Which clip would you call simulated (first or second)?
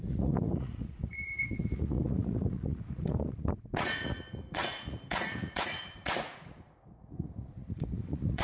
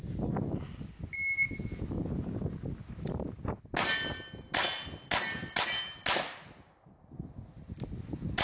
first